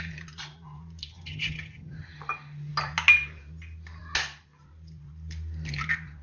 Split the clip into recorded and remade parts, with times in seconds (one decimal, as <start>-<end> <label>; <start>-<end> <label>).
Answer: 0.0-1.1 recorded; 1.1-2.1 remade; 2.1-6.2 recorded